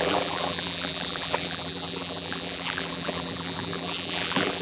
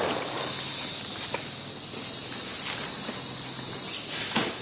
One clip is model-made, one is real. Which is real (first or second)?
second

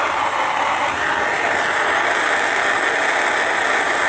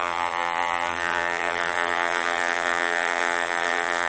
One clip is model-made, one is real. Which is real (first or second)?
first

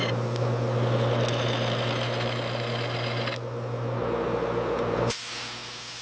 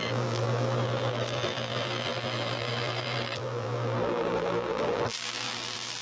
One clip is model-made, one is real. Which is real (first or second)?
first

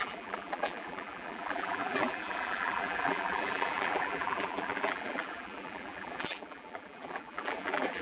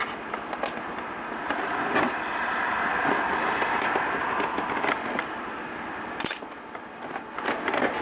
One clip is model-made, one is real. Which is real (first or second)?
second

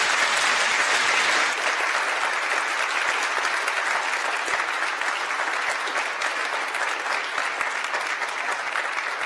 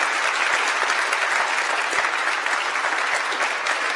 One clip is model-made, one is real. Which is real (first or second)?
first